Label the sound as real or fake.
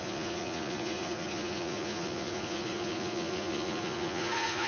fake